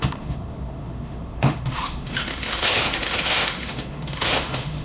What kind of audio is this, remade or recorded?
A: remade